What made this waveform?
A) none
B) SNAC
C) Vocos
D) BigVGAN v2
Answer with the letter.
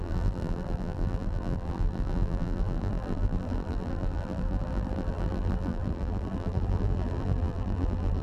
D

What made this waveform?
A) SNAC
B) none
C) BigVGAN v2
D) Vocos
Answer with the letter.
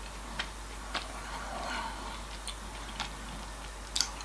B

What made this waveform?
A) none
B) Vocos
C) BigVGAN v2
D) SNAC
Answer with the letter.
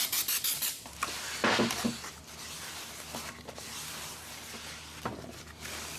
C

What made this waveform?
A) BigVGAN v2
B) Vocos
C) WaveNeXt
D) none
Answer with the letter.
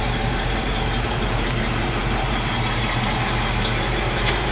A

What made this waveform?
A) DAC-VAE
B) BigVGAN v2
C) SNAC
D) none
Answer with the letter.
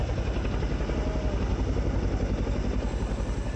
D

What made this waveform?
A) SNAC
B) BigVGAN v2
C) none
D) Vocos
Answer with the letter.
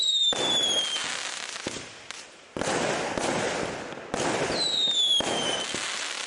C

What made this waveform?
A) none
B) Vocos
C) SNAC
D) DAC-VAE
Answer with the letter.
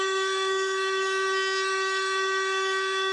C